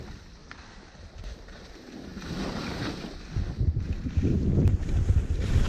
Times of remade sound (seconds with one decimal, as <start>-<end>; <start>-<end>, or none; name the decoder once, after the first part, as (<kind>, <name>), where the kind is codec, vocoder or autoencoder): 0.0-0.4 (vocoder, BigVGAN v2); 1.7-5.7